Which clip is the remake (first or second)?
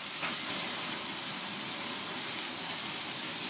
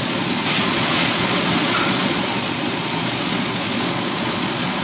second